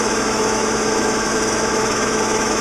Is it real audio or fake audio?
fake